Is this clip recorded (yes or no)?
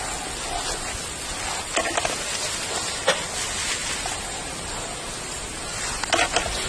yes